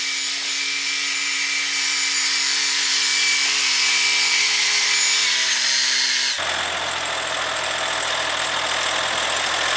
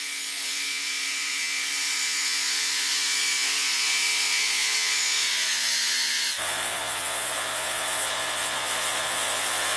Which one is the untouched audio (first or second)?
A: first